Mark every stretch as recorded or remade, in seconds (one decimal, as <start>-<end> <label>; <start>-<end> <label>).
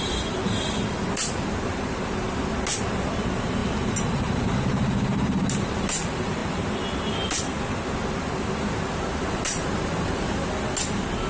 0.0-11.3 recorded